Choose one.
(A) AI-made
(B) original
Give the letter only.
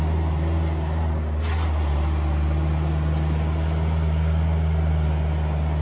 B